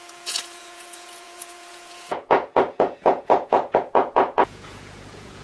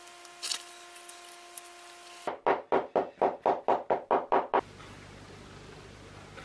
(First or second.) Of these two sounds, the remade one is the first